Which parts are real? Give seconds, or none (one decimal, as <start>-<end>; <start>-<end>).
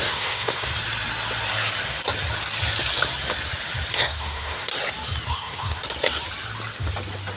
0.7-3.9; 4.7-5.3; 5.8-7.4